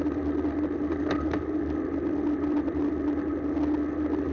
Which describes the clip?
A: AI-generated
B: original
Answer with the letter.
B